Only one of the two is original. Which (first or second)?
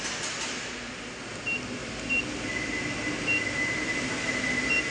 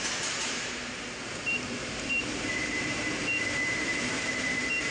first